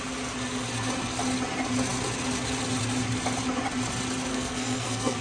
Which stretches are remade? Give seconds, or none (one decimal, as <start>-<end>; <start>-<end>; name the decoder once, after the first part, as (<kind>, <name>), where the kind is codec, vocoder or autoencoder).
4.3-5.2 (codec, SNAC)